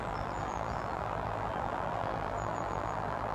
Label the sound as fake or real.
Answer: fake